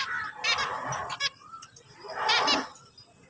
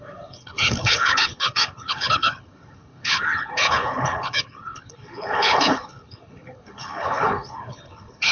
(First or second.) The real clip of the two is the first